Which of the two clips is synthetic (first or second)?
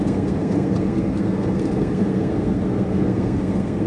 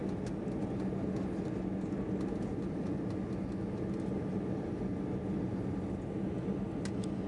first